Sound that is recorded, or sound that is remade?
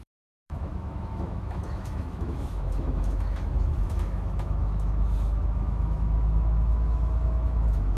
remade